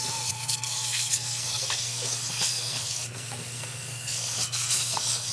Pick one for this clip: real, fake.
fake